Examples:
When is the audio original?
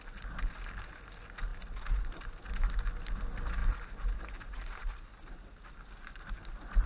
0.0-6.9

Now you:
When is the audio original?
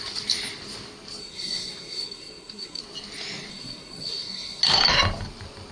0.0-1.2; 2.8-3.5; 4.6-5.7